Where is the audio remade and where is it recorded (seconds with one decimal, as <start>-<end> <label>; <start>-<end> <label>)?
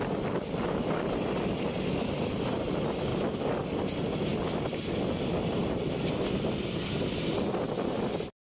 0.0-8.4 recorded